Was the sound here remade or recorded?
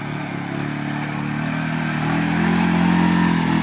recorded